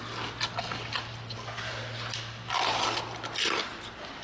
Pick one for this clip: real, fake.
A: real